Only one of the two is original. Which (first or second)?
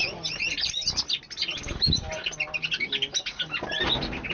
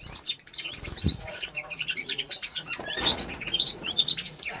first